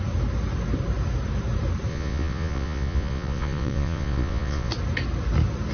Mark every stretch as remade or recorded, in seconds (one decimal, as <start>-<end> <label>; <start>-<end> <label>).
0.0-1.9 recorded; 1.9-4.7 remade; 4.7-5.7 recorded